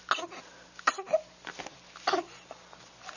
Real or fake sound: real